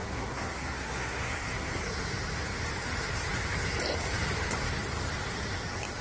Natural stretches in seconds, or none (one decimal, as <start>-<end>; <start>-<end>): 1.8-6.0

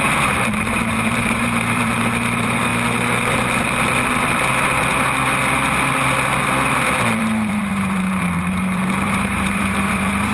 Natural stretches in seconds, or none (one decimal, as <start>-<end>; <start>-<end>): 2.7-7.2

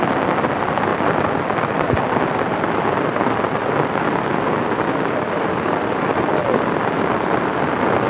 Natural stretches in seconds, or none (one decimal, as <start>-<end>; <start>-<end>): 0.0-8.1